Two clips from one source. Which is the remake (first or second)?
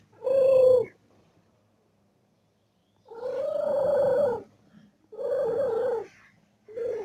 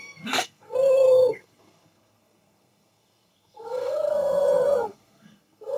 second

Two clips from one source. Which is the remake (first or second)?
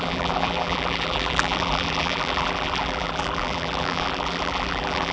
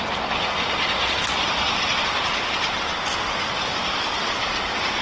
first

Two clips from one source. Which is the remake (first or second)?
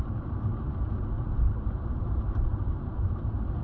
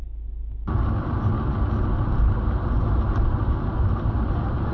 first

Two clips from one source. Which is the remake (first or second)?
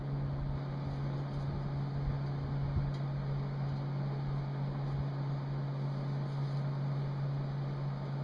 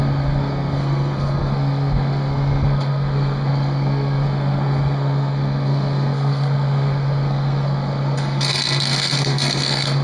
second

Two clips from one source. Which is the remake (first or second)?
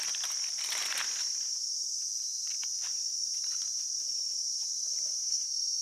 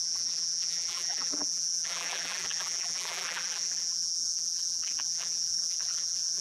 second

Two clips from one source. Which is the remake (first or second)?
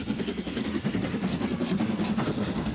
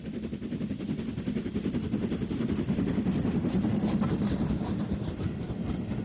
first